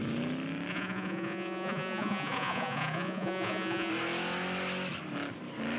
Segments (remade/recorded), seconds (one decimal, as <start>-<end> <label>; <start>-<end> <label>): 0.0-0.7 recorded; 0.7-3.9 remade; 3.9-5.8 recorded